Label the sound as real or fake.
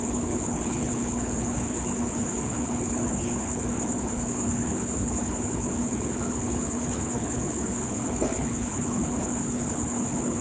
fake